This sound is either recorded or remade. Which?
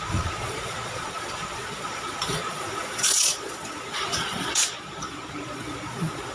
remade